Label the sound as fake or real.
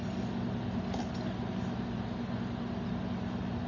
real